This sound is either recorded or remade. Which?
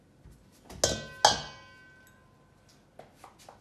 recorded